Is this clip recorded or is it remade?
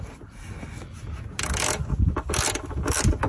recorded